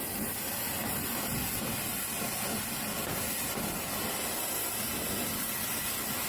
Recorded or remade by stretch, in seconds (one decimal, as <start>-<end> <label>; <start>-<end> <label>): 0.0-6.3 recorded